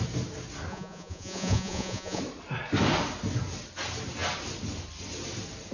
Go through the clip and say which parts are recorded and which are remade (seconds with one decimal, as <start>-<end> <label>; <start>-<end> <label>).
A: 0.0-0.7 recorded; 0.7-2.2 remade; 2.2-5.7 recorded